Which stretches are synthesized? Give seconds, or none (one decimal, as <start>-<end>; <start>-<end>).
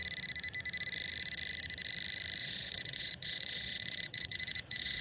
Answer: 2.4-5.0